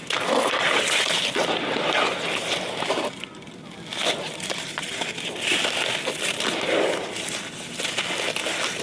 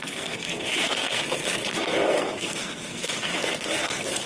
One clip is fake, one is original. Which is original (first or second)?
first